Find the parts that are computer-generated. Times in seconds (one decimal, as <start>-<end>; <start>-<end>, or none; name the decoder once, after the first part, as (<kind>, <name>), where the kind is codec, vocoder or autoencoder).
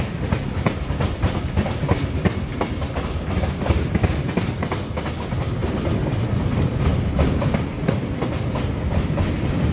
2.5-3.2 (vocoder, BigVGAN v2); 5.6-6.3; 6.9-8.1